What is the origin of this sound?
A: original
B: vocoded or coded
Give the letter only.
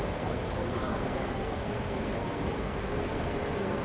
B